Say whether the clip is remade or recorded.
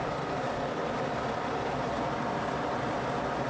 recorded